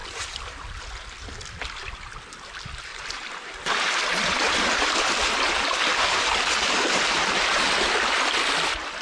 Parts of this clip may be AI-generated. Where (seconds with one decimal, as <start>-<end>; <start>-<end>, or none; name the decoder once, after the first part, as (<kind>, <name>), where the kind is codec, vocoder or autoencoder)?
2.9-7.6 (vocoder, BigVGAN v2)